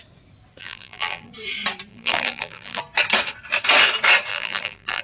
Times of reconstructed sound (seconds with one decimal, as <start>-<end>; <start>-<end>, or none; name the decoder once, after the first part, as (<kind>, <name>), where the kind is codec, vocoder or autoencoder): 0.6-1.3 (vocoder, BigVGAN v2); 1.9-2.8; 4.3-5.0